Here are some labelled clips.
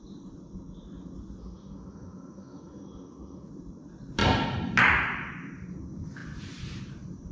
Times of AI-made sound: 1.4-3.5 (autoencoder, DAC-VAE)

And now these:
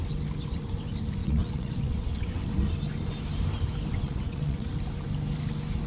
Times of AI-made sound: 1.2-2.4 (vocoder, WaveNeXt); 3.9-4.7

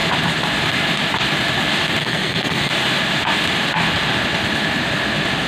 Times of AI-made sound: 2.0-2.7 (codec, SNAC)